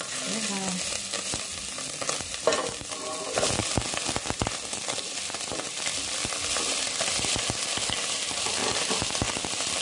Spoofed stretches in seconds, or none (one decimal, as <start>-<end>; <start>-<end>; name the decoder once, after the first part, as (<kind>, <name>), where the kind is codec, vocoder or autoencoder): none